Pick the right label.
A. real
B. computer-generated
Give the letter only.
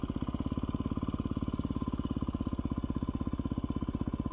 A